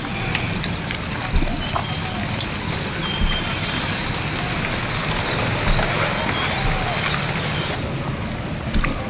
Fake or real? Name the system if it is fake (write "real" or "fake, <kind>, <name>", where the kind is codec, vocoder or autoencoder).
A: real